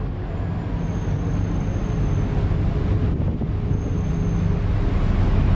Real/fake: real